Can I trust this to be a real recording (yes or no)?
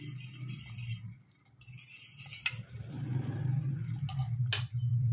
yes